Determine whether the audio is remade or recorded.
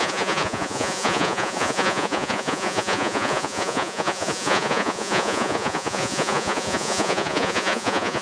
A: remade